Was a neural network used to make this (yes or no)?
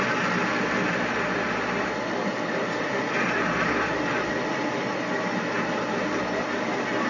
no